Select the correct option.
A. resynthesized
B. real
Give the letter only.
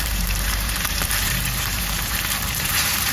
A